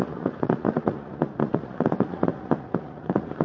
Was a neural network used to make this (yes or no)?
yes